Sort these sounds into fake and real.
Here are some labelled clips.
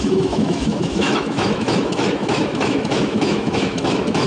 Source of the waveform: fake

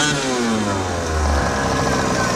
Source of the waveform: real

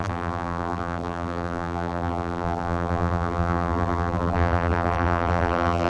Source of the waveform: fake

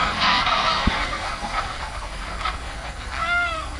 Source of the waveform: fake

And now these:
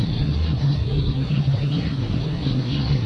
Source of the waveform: fake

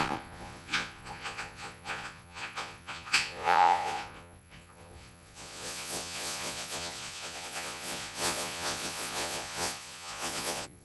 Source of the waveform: fake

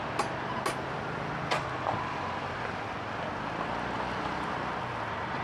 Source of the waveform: real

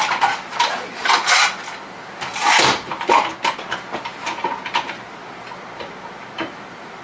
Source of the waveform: real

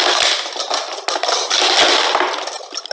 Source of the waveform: real